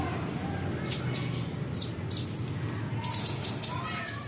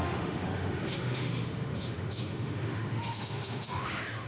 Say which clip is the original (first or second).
first